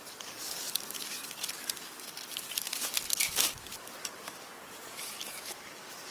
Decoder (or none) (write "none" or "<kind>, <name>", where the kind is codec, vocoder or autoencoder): codec, DAC